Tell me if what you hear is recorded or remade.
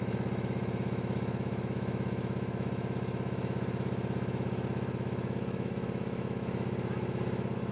remade